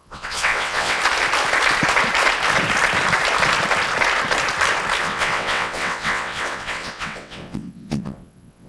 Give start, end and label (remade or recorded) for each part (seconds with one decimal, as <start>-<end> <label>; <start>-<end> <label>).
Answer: 0.0-1.0 remade; 1.0-5.0 recorded; 5.0-8.7 remade